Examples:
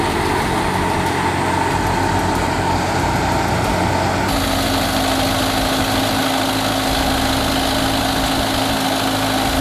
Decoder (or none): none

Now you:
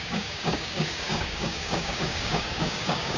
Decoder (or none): codec, DAC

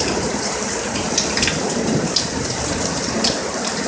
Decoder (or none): vocoder, BigVGAN v2